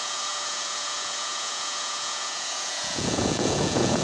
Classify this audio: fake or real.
fake